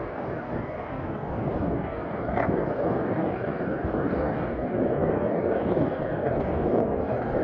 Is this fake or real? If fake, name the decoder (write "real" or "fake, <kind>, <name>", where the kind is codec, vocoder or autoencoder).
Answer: fake, codec, DAC